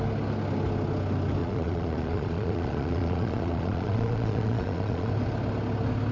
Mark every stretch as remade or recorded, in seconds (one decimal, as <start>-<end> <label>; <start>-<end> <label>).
0.0-1.4 recorded; 1.4-5.1 remade; 5.1-6.1 recorded